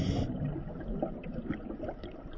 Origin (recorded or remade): recorded